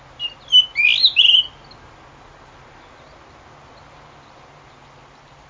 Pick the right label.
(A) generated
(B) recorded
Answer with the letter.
B